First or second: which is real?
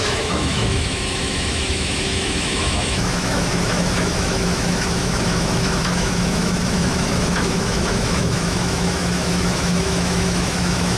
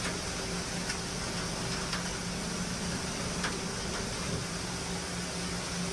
second